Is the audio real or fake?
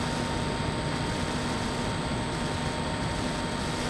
real